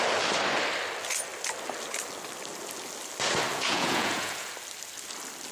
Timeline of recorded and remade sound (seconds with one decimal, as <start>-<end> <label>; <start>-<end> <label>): 0.0-3.5 recorded; 3.5-4.5 remade; 4.5-5.5 recorded